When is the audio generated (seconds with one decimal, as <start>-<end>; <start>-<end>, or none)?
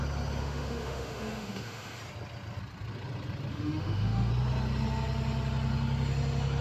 0.4-2.0; 3.5-4.3